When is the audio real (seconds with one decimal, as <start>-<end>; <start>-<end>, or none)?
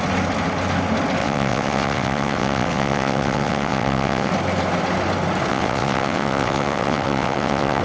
0.0-1.2; 4.3-5.5